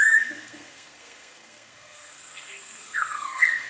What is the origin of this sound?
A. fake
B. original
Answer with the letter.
A